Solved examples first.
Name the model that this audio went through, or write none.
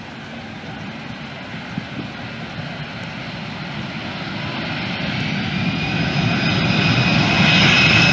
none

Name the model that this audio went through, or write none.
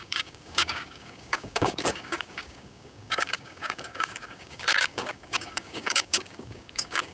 codec, DAC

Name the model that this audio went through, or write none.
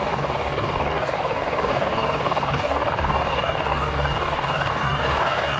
codec, DAC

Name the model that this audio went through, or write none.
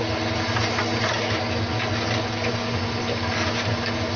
none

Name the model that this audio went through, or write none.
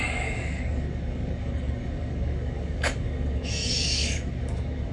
codec, DAC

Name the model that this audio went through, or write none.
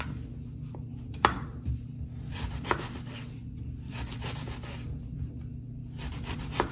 none